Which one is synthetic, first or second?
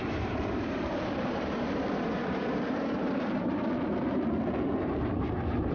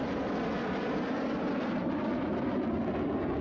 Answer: first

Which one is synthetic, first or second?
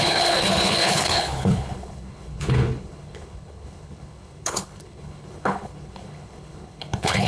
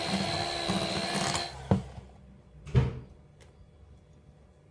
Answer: first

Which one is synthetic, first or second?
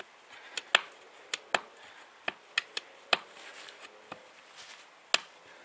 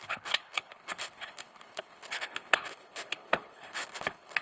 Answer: second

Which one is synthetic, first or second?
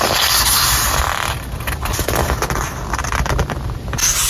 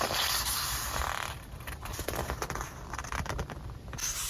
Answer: second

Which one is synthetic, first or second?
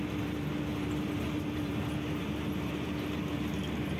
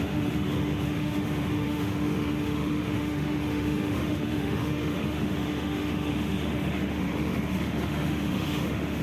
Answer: second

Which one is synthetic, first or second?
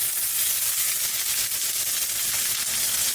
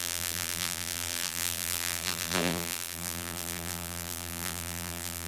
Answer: second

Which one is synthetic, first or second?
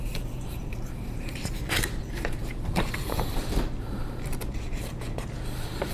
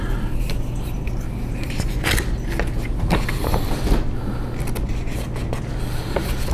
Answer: first